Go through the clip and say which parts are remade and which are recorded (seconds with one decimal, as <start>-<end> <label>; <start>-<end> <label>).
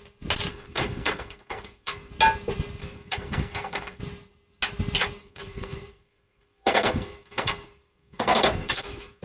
0.0-0.5 recorded; 0.5-2.1 remade; 2.1-2.8 recorded; 2.8-4.0 remade; 4.0-5.2 recorded; 5.2-9.2 remade